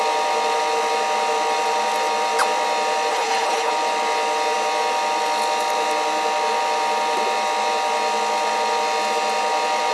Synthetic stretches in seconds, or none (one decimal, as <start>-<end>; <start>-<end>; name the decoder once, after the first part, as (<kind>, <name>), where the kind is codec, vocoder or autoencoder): 3.1-3.7 (codec, HILCodec)